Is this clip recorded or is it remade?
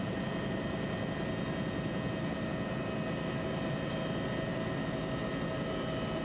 recorded